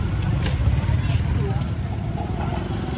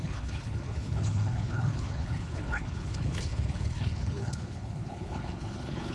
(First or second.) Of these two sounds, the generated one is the second